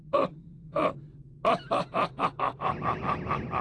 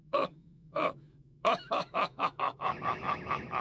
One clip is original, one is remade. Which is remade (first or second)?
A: second